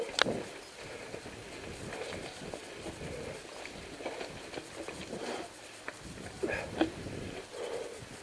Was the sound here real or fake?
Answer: real